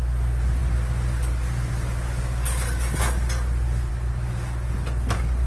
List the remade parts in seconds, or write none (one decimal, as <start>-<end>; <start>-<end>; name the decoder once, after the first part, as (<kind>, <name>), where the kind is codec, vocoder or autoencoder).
none